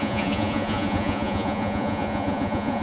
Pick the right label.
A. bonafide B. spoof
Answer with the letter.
B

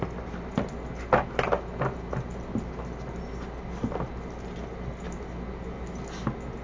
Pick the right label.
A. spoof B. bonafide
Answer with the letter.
B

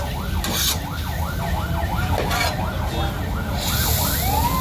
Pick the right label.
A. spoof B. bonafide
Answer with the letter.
B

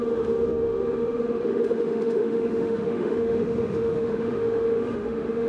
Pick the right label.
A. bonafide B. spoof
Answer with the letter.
B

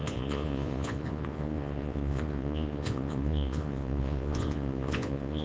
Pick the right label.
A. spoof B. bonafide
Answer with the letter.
A